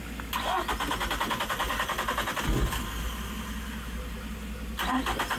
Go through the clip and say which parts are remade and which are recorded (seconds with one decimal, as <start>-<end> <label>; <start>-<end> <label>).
0.0-5.4 recorded